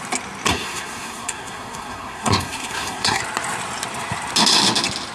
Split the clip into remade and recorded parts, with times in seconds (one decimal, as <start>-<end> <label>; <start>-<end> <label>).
0.0-0.5 recorded; 0.5-3.2 remade; 3.2-5.1 recorded